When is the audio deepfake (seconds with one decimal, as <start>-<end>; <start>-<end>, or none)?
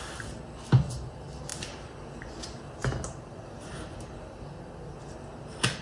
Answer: none